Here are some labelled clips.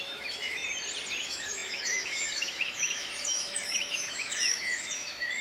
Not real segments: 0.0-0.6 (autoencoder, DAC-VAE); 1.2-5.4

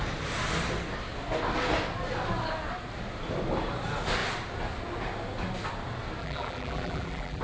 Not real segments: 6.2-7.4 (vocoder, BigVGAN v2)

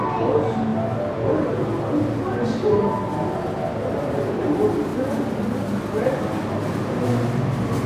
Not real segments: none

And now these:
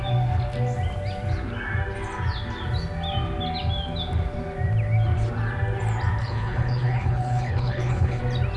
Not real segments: 6.2-8.2 (codec, HILCodec)

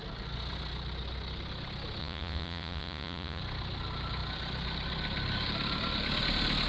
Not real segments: 2.0-3.4 (vocoder, Vocos)

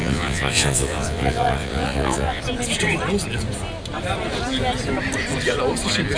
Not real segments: 0.0-2.4 (vocoder, WaveNeXt)

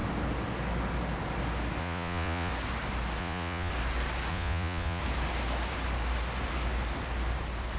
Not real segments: 1.8-2.5 (vocoder, Vocos); 3.2-3.7; 4.3-5.0